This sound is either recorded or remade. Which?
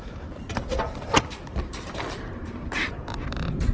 remade